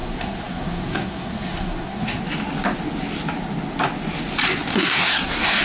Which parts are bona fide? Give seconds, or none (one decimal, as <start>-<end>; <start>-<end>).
2.2-4.7